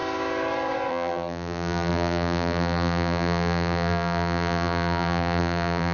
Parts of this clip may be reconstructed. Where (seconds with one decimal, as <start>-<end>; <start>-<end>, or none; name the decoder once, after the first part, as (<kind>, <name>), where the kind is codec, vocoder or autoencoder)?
0.9-5.9 (vocoder, BigVGAN v2)